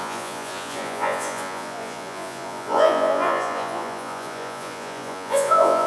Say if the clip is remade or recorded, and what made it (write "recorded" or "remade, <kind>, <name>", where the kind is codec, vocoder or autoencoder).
remade, vocoder, Vocos